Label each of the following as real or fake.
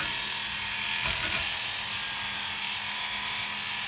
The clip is real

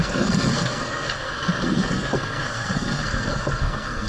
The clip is fake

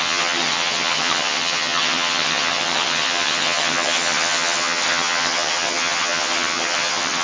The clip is fake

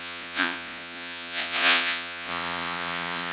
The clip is fake